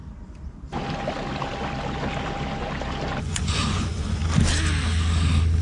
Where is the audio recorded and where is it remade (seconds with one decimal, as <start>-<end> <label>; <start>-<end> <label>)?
0.0-3.2 recorded; 3.2-4.2 remade; 4.2-5.6 recorded

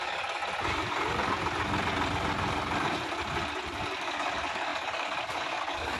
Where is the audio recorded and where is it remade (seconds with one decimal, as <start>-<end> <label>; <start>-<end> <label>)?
0.0-0.4 remade; 0.4-4.0 recorded; 4.0-6.0 remade